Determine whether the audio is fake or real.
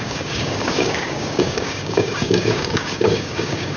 fake